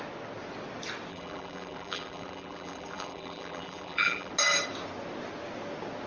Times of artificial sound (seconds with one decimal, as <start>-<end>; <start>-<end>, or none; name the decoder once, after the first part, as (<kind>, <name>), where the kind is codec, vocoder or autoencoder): 1.1-4.3 (vocoder, BigVGAN v2)